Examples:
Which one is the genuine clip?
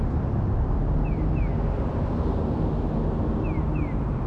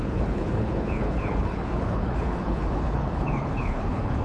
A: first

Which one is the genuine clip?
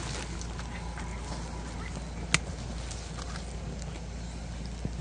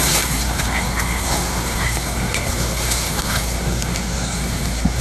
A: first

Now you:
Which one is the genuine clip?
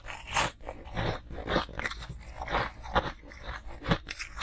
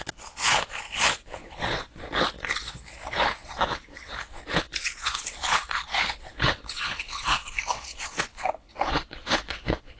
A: first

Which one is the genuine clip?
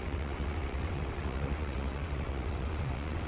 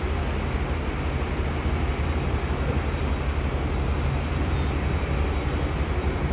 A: second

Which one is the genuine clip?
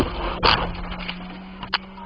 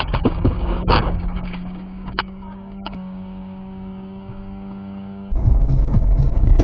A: first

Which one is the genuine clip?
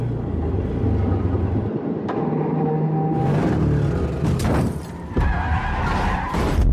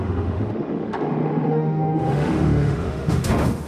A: first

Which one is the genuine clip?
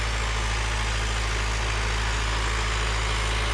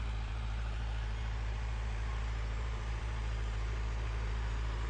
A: first